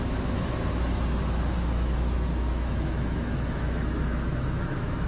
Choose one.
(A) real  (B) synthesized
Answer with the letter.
B